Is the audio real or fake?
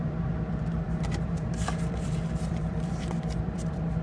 fake